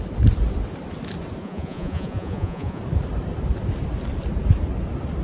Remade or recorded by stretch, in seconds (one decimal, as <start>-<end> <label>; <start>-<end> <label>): 0.0-1.4 recorded; 1.4-2.8 remade; 2.8-5.2 recorded

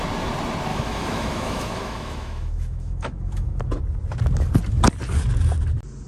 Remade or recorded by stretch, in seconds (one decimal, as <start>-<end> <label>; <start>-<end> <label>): 0.0-0.7 recorded; 0.7-3.6 remade; 3.6-6.1 recorded

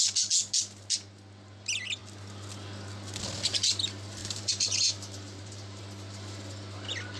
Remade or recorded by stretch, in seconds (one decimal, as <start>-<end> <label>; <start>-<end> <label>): 0.0-4.2 recorded; 4.2-5.8 remade; 5.8-7.2 recorded